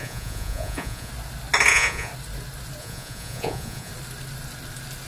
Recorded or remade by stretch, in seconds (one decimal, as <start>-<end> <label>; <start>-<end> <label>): 0.0-1.1 remade; 1.1-1.7 recorded; 1.7-2.1 remade; 2.1-2.8 recorded; 2.8-3.9 remade; 3.9-5.1 recorded